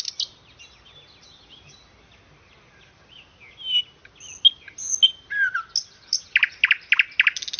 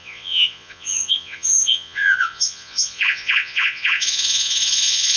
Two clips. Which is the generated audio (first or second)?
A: second